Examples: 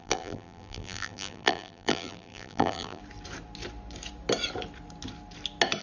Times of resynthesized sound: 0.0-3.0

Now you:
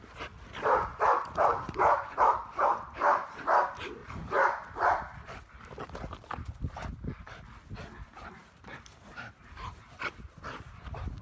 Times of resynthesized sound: 1.5-2.7; 4.0-5.3; 8.4-11.2